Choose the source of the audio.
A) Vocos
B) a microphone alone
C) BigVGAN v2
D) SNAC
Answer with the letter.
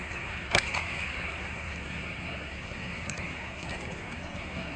D